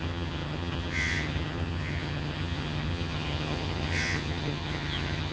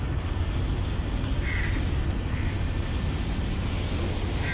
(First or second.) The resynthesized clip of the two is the first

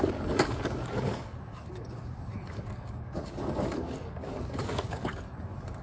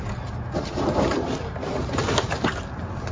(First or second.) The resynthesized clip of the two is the first